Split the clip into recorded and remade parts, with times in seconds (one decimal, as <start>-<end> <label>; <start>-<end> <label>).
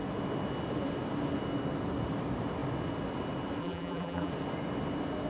0.0-3.6 recorded; 3.6-4.3 remade; 4.3-5.3 recorded